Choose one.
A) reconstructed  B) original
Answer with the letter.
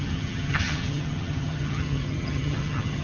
A